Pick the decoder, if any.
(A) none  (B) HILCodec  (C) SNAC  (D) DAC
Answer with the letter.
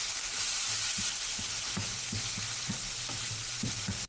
A